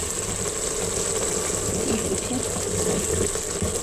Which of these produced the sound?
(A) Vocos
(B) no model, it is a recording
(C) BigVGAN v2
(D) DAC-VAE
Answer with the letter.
B